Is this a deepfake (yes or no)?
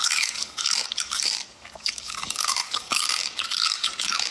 yes